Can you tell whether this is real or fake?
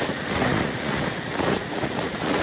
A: fake